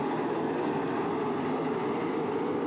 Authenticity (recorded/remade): remade